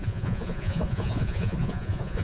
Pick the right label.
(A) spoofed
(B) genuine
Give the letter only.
A